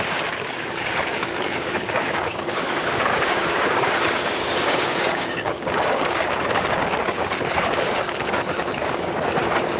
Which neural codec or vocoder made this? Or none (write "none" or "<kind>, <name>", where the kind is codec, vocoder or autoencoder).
codec, DAC